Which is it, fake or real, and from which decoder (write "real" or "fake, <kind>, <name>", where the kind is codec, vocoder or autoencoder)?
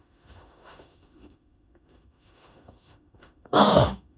fake, autoencoder, DAC-VAE